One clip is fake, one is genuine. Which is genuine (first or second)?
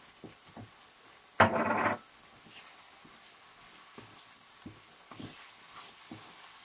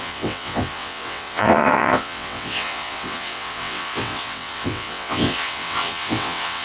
first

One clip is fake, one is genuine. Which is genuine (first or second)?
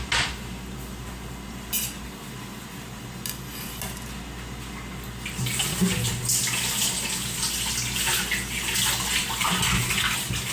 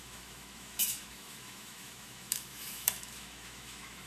first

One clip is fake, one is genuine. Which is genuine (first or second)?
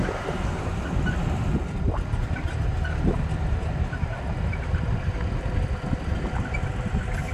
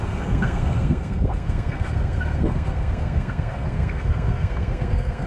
first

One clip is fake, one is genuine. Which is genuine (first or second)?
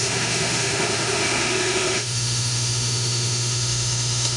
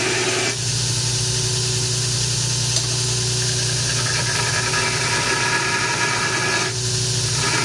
second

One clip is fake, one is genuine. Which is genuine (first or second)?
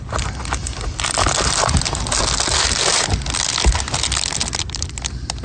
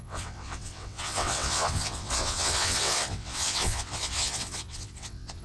first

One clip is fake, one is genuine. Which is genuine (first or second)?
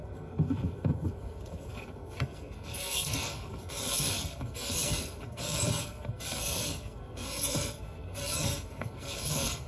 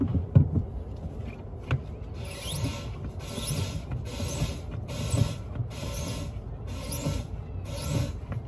second